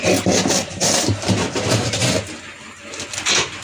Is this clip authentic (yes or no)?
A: yes